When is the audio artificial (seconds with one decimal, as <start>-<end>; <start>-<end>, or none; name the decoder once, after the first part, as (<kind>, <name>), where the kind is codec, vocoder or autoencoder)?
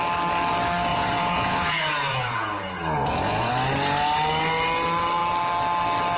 0.9-3.5 (vocoder, Vocos)